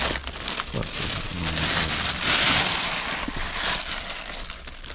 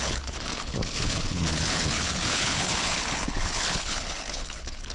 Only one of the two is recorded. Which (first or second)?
first